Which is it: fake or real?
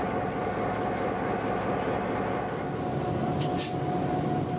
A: real